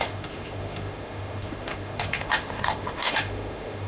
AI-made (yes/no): yes